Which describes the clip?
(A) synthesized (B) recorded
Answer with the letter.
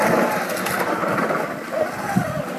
B